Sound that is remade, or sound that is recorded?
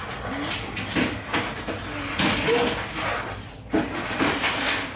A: recorded